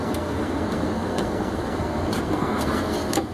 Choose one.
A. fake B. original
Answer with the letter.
A